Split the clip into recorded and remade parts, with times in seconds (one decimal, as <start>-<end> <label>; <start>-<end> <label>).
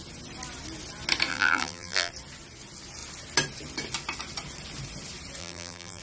0.0-1.3 recorded; 1.3-2.1 remade; 2.1-5.4 recorded; 5.4-6.0 remade